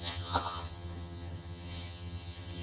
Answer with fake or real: fake